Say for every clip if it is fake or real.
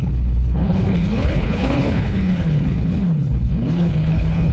fake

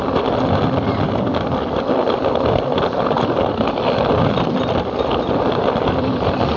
real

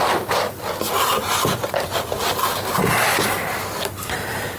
real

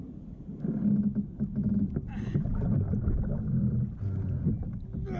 real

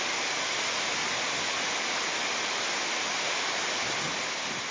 real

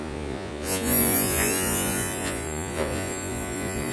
fake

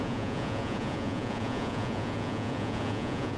fake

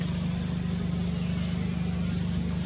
real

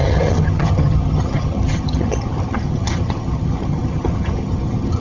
fake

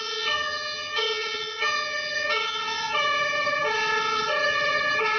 fake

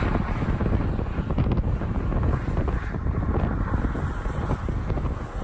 real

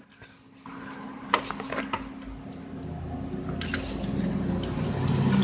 real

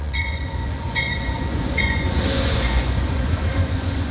fake